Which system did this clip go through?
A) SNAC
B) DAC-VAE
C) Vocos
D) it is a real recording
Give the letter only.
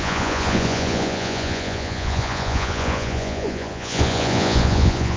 C